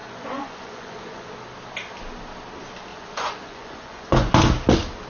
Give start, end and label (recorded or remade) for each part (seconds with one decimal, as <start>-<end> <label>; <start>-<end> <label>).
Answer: 0.0-1.3 remade; 1.3-2.9 recorded; 2.9-4.3 remade; 4.3-5.1 recorded